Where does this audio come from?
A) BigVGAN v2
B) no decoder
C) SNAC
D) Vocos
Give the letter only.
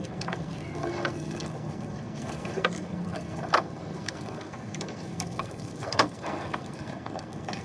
C